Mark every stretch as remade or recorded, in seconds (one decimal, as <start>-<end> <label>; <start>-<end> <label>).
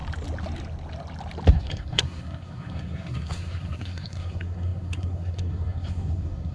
0.0-1.5 recorded; 1.5-6.5 remade